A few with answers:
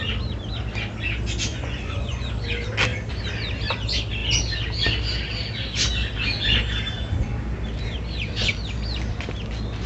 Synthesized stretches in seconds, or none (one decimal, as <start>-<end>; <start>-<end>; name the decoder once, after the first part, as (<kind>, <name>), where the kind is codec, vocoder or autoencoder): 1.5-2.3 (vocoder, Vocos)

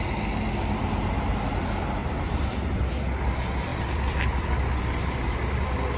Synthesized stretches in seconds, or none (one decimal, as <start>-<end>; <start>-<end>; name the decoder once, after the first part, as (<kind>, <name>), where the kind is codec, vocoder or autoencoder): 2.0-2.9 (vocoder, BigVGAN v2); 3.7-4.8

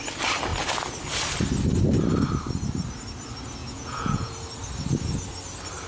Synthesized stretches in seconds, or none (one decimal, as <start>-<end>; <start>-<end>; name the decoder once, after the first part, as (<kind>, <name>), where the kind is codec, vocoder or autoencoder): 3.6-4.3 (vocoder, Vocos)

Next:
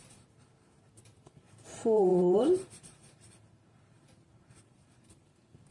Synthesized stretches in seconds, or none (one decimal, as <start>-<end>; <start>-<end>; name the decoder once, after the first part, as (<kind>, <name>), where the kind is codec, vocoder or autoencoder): 0.0-5.7 (vocoder, BigVGAN v2)